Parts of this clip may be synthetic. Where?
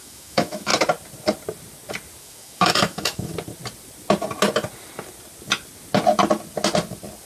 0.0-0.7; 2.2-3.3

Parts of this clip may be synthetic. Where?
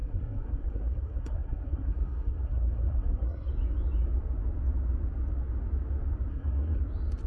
0.0-3.5; 6.3-6.8